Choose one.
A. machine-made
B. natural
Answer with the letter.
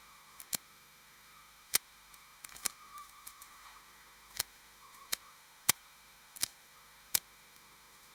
A